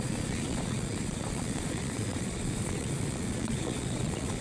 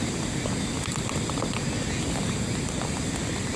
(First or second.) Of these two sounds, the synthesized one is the first